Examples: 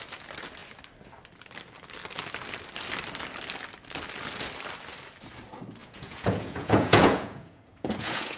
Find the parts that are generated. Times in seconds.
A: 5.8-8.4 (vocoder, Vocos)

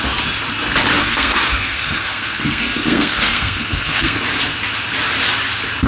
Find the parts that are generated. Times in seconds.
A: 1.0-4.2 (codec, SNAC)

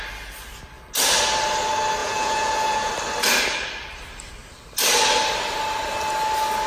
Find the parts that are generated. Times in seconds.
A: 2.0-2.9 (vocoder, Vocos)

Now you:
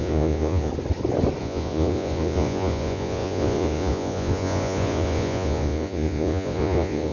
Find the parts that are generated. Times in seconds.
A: 0.0-0.7 (vocoder, Vocos); 1.4-7.1